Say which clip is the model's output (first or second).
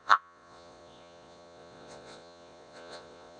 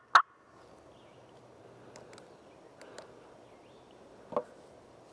first